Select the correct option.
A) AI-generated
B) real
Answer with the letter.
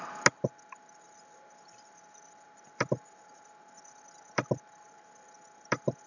B